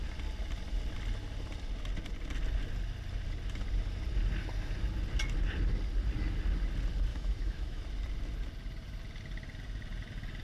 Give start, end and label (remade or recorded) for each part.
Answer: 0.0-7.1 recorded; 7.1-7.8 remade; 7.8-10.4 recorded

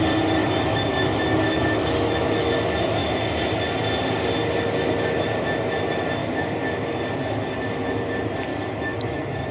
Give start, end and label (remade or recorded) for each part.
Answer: 0.0-0.4 recorded; 0.4-2.5 remade; 2.5-8.5 recorded; 8.5-9.5 remade

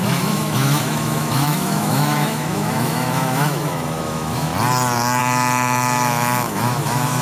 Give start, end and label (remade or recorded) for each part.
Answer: 0.0-4.5 remade; 4.5-5.2 recorded; 5.2-7.2 remade

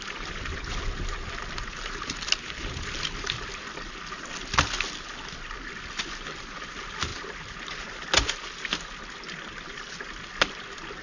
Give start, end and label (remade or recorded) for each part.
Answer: 0.0-11.0 recorded

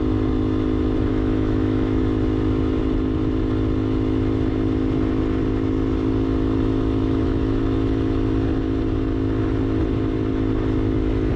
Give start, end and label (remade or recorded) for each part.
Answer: 0.0-1.1 recorded; 1.1-2.0 remade; 2.0-7.0 recorded; 7.0-7.6 remade; 7.6-11.4 recorded

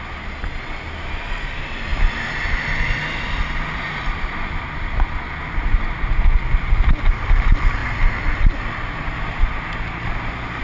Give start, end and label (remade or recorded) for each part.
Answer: 0.0-10.6 recorded

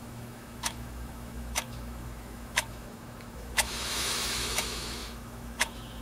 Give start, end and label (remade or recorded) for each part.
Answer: 0.0-6.0 remade

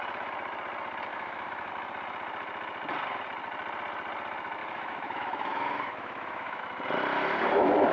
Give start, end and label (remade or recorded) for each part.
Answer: 0.0-1.1 recorded; 1.1-1.7 remade; 1.7-4.6 recorded; 4.6-6.6 remade; 6.6-7.9 recorded